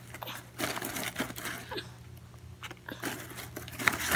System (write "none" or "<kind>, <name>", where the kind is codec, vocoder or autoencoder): none